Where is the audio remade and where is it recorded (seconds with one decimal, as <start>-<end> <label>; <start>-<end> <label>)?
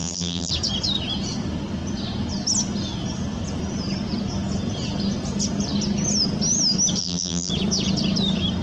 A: 0.0-0.5 remade; 0.5-7.0 recorded; 7.0-7.5 remade; 7.5-8.6 recorded